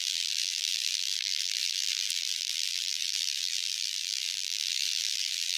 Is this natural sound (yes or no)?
no